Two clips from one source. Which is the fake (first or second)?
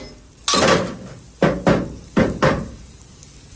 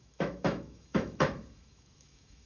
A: second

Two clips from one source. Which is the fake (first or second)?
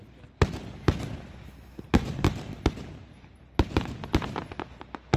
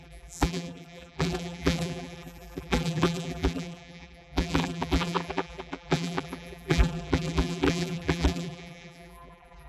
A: second